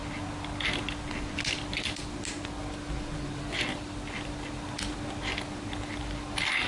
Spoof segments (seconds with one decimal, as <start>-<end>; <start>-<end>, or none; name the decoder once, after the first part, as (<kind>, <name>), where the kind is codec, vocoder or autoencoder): none